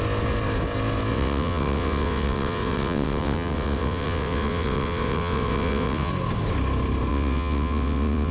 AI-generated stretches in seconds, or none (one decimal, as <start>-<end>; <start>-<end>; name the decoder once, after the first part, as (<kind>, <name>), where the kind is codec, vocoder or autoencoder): 1.1-6.1 (vocoder, WaveNeXt); 7.1-8.3